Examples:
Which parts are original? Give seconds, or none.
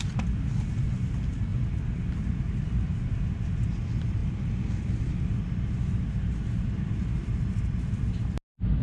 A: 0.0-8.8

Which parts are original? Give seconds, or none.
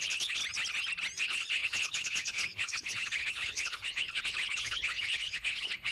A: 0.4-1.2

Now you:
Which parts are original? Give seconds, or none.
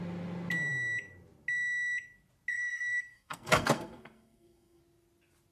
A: 0.0-2.5; 4.8-5.5